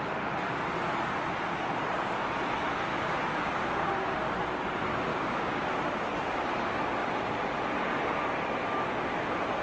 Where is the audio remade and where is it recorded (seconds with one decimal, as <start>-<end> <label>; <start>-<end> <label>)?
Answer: 0.0-2.9 recorded; 2.9-3.9 remade; 3.9-5.1 recorded; 5.1-5.7 remade; 5.7-9.6 recorded